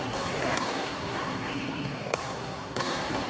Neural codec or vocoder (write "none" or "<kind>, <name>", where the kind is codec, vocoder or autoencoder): codec, SNAC